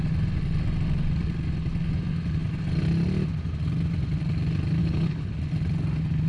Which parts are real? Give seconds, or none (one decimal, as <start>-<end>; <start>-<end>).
0.0-4.8; 5.3-6.3